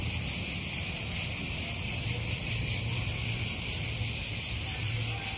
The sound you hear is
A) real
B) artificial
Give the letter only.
B